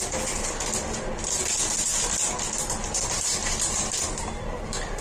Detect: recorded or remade recorded